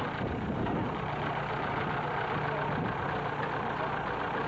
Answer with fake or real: real